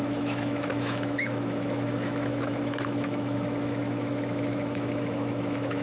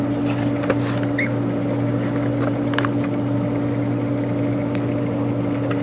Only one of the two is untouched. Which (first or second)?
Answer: second